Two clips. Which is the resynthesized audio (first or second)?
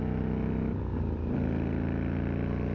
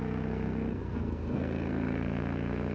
second